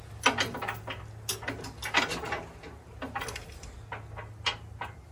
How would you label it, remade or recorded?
recorded